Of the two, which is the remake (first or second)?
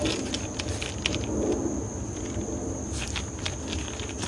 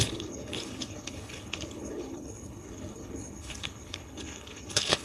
second